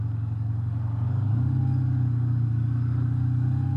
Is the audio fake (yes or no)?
yes